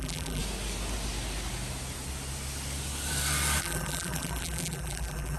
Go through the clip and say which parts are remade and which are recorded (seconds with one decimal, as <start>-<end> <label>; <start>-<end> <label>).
0.0-0.4 remade; 0.4-3.6 recorded; 3.6-5.4 remade